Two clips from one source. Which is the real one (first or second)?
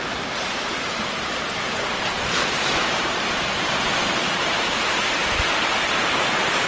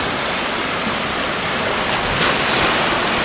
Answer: second